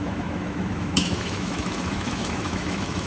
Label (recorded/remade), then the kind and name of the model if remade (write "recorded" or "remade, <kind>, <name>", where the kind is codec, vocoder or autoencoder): remade, autoencoder, DAC-VAE